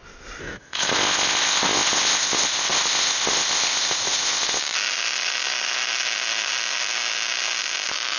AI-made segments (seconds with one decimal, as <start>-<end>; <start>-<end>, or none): 0.4-4.6